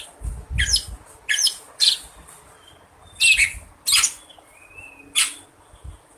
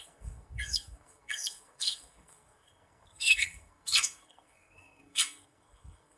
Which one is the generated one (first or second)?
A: second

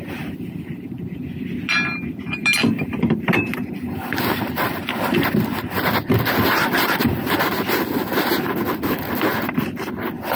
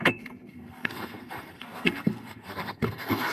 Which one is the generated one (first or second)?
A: second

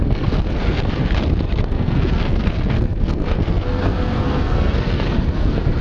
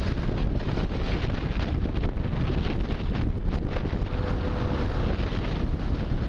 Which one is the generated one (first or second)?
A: first